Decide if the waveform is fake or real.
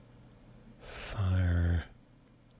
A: real